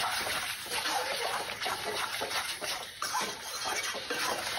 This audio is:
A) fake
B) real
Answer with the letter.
A